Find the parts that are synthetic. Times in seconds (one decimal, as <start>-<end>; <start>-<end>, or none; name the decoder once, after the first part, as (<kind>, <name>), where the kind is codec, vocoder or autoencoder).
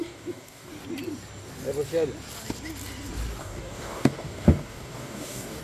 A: 0.0-0.7 (codec, DAC); 3.4-5.6